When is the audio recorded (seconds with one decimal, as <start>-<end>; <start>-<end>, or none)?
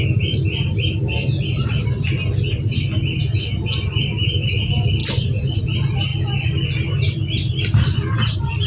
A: 0.0-1.6; 2.5-8.7